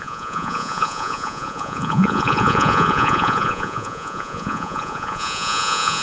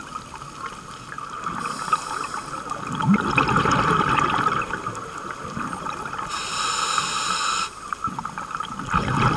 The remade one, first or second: first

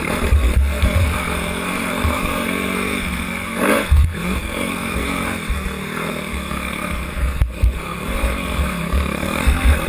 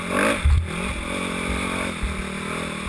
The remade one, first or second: first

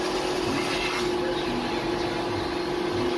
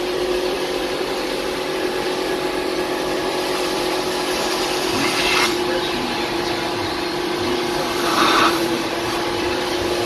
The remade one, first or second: second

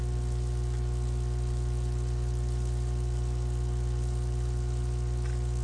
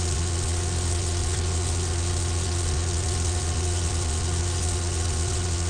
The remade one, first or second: second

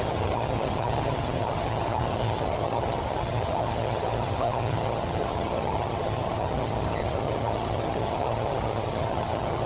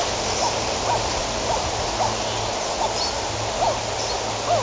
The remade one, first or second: first